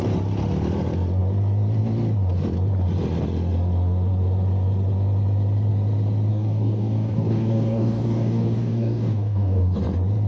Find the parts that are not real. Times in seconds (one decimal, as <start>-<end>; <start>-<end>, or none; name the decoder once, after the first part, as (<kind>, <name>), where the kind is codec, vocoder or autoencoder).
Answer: 6.3-9.8 (codec, DAC)